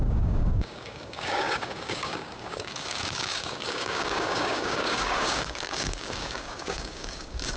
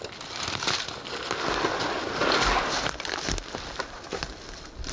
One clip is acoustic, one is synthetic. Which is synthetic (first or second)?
first